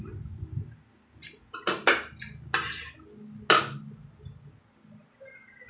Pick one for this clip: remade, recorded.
recorded